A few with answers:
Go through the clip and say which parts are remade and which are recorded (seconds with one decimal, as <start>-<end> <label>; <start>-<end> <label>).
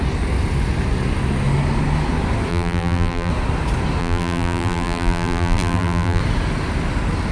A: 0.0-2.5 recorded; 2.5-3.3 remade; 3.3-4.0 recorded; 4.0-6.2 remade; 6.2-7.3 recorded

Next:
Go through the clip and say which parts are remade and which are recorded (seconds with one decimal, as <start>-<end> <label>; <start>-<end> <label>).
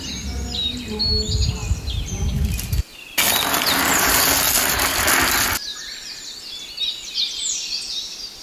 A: 0.0-8.4 recorded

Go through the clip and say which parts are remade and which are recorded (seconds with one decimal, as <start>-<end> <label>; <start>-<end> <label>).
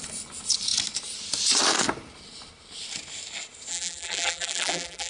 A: 0.0-3.7 recorded; 3.7-5.1 remade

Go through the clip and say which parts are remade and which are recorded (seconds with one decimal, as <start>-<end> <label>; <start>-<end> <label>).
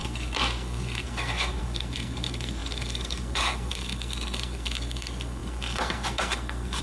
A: 0.0-6.8 remade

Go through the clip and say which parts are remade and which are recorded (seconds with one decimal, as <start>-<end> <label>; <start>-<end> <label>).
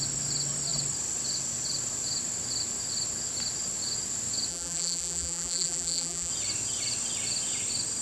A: 0.0-4.5 recorded; 4.5-6.3 remade; 6.3-8.0 recorded